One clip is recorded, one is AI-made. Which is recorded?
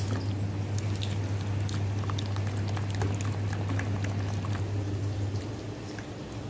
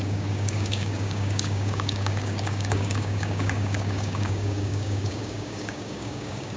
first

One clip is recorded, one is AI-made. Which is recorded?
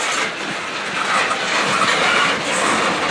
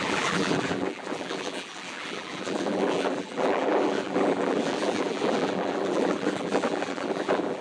first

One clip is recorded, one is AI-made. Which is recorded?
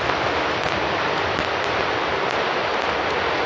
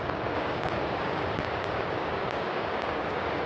first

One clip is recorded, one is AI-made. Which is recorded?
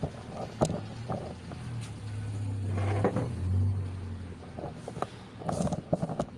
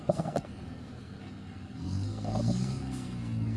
first